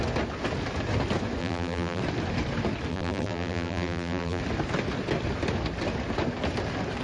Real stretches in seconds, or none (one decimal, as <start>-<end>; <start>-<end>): 0.0-1.4; 2.0-2.9; 4.4-7.0